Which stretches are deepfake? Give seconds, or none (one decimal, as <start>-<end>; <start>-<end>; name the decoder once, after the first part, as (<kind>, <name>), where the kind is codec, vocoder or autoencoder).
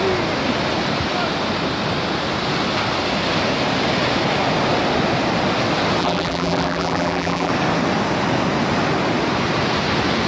6.0-7.5 (vocoder, BigVGAN v2)